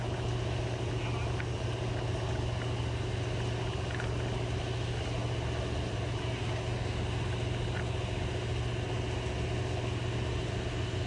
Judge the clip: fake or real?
real